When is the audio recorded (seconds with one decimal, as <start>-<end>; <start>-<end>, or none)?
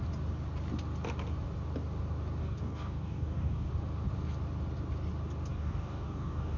0.0-2.4; 3.7-5.5